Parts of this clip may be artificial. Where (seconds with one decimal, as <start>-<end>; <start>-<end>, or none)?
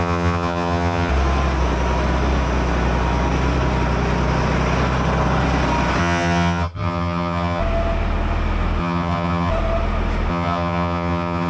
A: 0.0-1.1; 6.0-7.6; 8.8-9.5; 10.3-11.5